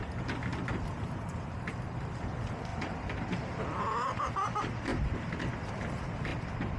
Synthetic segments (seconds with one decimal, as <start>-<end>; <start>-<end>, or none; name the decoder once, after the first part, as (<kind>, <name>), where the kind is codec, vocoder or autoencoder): 0.5-2.2 (vocoder, BigVGAN v2); 2.7-3.8; 4.9-5.7; 6.3-6.8